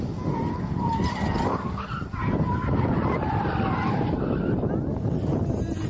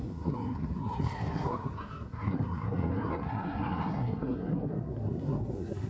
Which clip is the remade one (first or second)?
second